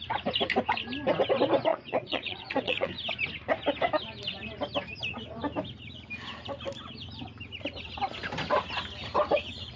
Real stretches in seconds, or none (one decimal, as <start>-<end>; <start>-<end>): 0.0-1.7; 2.9-9.8